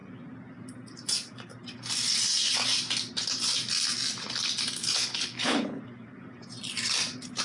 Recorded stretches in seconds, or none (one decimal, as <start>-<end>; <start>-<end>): 0.0-4.8; 5.8-7.4